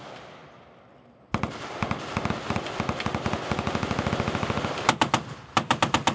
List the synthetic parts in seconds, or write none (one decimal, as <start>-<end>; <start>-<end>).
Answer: none